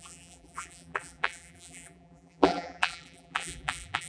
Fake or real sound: fake